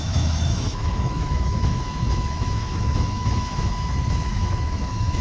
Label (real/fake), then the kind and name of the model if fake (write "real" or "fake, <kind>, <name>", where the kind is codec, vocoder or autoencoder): fake, autoencoder, DAC-VAE